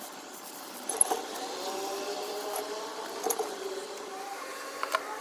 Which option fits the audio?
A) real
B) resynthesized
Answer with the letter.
B